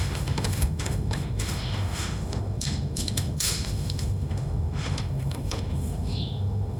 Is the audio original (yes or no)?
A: no